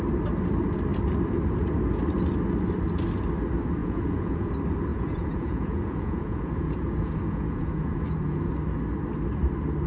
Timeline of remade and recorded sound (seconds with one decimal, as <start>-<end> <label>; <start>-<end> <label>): 0.0-3.8 recorded; 3.8-4.5 remade; 4.5-4.9 recorded; 4.9-8.5 remade; 8.5-9.9 recorded